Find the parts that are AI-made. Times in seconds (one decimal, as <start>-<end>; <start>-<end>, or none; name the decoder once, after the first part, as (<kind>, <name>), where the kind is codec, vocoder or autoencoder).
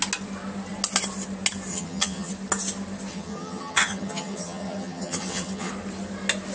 1.7-2.3 (vocoder, HiFi-GAN); 3.1-5.7